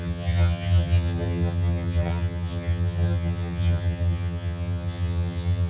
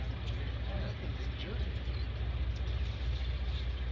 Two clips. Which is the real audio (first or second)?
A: second